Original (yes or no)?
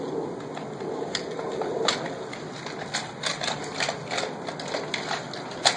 yes